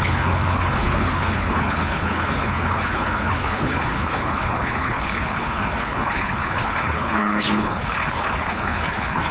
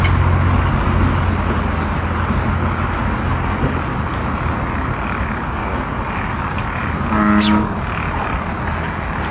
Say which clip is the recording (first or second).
second